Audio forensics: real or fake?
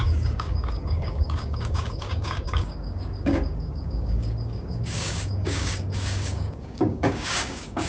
fake